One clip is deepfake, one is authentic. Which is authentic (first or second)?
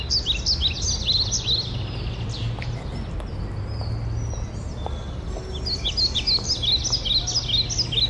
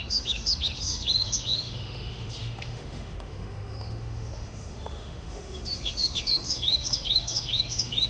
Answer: first